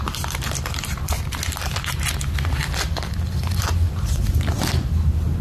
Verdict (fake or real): fake